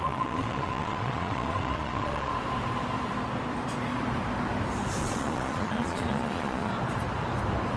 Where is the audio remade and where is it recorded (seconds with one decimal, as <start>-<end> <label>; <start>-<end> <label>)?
0.0-2.3 remade; 2.3-5.0 recorded; 5.0-6.7 remade; 6.7-7.8 recorded